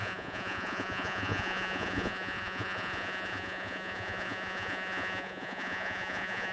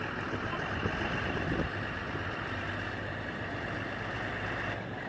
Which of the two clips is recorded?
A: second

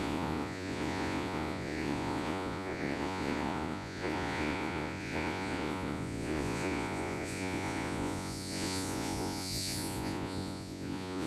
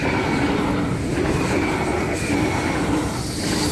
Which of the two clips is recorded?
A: second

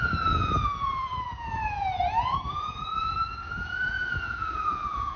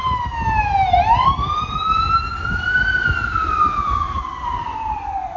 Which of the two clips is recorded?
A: second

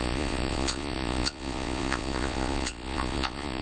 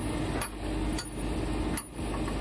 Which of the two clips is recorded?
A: second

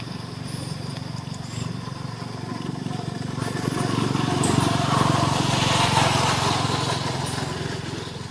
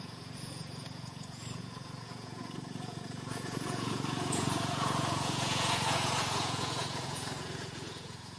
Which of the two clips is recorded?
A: first